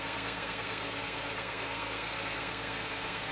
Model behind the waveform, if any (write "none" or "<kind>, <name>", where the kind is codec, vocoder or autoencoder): codec, SNAC